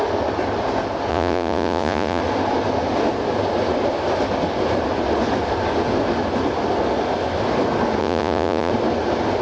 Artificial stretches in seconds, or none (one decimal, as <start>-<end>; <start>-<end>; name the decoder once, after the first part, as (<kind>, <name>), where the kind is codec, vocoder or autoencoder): 1.1-2.2 (vocoder, Vocos); 8.0-8.7